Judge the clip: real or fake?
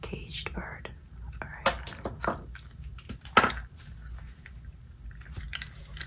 real